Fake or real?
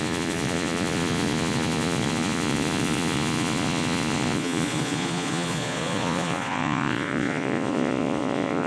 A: fake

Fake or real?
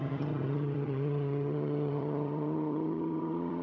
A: fake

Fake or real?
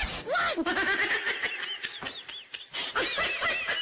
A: real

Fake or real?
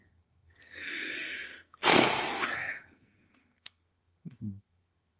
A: fake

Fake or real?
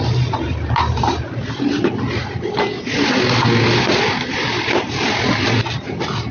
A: real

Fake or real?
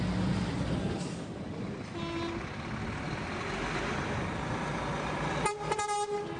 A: real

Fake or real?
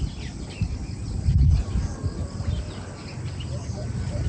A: real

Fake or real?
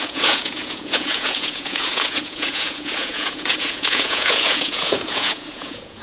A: fake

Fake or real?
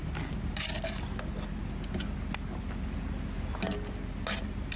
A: real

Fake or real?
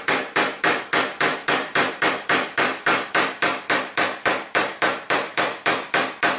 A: fake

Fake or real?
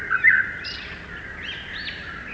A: real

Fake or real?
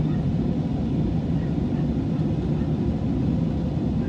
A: real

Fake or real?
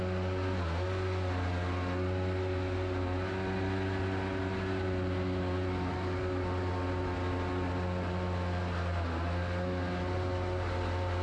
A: real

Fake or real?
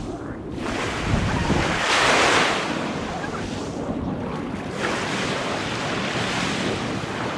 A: real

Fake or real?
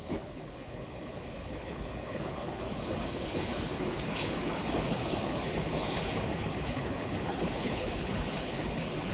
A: fake